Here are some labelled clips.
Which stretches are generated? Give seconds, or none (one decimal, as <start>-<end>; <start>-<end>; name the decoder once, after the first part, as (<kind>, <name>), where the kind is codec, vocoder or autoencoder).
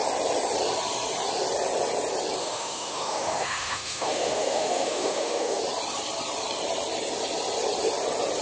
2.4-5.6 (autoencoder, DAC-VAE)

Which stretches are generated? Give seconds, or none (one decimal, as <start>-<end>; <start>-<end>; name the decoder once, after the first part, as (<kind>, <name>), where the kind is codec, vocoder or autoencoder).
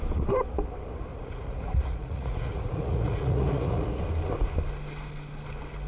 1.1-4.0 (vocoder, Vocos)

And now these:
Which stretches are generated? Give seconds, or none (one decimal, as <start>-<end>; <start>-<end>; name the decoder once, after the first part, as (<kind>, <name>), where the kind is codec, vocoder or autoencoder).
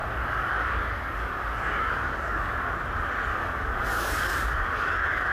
0.0-2.7 (codec, DAC); 3.3-5.3